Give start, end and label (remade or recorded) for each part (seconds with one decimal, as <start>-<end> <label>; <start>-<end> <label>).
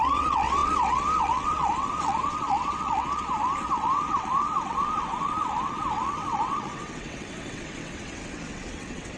0.0-9.2 remade